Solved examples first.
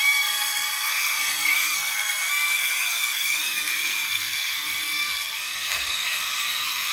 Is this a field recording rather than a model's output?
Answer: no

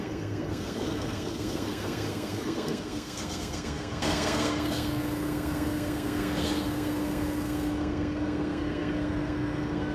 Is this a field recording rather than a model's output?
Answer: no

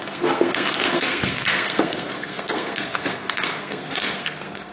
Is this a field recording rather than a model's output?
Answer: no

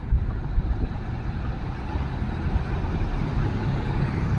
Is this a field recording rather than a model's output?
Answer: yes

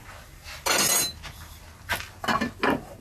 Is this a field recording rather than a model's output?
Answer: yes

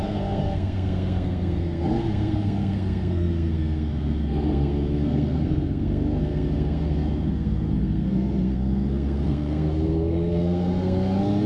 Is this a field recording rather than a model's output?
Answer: no